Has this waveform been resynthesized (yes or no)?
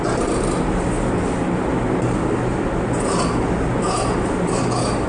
no